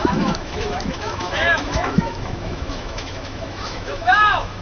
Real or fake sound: fake